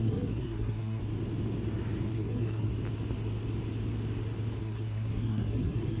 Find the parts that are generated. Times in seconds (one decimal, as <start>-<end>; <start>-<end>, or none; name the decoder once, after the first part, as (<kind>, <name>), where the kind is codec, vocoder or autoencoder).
0.0-1.0 (codec, SNAC); 2.1-2.7; 4.6-6.0